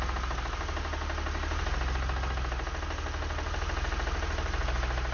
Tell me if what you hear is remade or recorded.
recorded